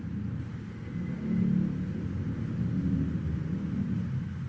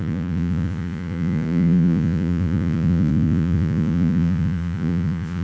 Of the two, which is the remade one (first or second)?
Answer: second